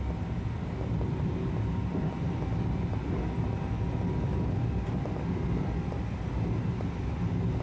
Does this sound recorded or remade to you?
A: recorded